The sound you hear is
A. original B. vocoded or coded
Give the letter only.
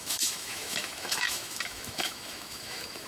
B